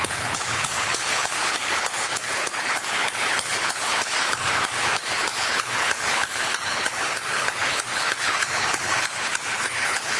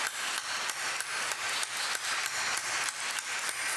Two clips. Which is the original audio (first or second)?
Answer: second